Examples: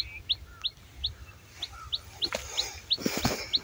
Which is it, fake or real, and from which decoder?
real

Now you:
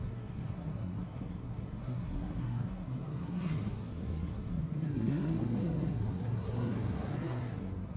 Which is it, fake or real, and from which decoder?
fake, codec, SNAC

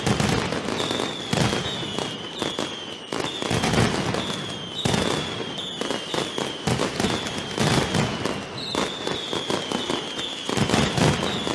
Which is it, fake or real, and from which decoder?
real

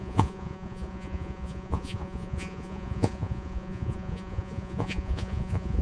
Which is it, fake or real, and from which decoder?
fake, vocoder, Vocos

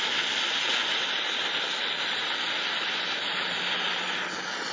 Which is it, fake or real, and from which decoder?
real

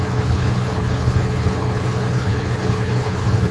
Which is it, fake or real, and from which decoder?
fake, codec, HILCodec